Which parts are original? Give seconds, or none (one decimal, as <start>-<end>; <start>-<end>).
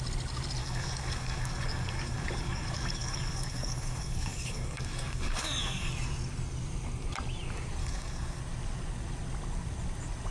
0.0-0.6; 5.9-7.8; 8.4-10.3